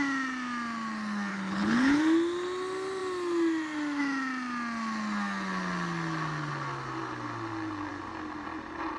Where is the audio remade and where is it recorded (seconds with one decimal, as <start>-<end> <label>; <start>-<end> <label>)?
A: 0.0-1.3 recorded; 1.3-2.0 remade; 2.0-9.0 recorded